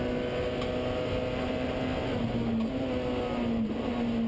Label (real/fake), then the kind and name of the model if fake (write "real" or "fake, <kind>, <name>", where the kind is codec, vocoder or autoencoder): real